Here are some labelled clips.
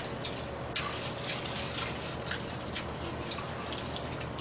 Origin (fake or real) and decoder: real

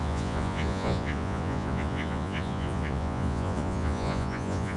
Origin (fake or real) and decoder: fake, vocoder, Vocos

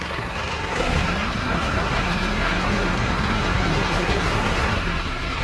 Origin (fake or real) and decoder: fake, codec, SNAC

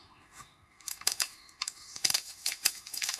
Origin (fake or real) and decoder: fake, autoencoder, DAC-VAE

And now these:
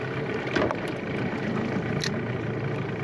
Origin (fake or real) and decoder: real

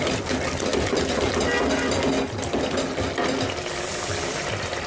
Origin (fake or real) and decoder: real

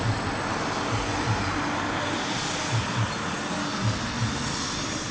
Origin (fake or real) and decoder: real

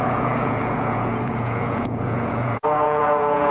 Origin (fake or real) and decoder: fake, vocoder, Vocos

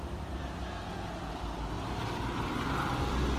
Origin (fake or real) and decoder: real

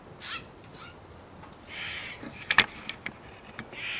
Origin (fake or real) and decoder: real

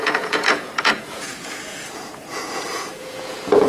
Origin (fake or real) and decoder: fake, vocoder, Vocos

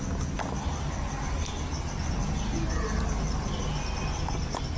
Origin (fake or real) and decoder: real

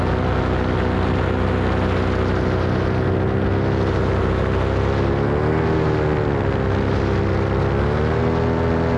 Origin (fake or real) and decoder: real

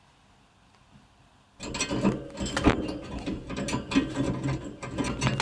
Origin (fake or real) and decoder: real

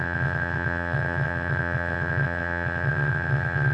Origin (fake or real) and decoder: fake, vocoder, WaveNeXt